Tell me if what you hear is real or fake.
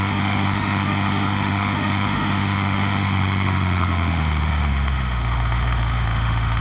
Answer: fake